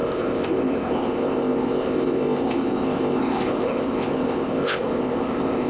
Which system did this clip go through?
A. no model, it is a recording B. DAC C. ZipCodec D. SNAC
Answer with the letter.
C